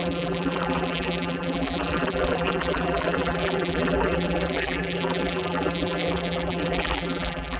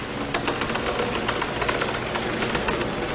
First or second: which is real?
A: second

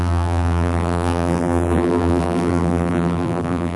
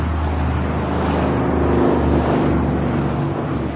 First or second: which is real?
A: second